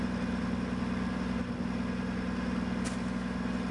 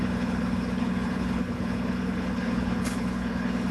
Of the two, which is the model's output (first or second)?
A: second